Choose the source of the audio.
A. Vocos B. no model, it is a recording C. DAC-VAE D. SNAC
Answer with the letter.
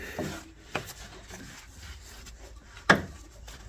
B